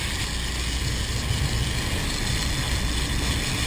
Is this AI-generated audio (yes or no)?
no